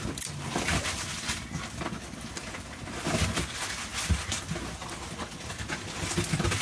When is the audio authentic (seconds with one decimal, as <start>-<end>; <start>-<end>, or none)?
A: 0.0-6.6